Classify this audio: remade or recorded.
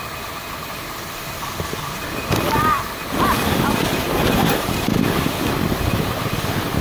recorded